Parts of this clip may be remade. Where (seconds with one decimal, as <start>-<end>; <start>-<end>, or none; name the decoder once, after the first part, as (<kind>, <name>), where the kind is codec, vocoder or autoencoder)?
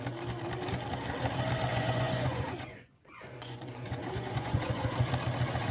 1.7-5.1 (vocoder, Vocos)